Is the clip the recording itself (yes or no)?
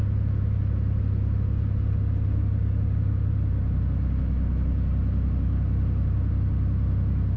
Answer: yes